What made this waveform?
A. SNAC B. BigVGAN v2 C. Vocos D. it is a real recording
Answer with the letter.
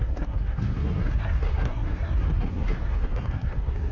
A